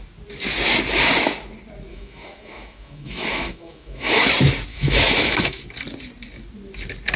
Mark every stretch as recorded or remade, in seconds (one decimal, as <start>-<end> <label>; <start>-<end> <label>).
0.0-1.9 recorded; 1.9-4.2 remade; 4.2-4.7 recorded; 4.7-5.6 remade; 5.6-7.2 recorded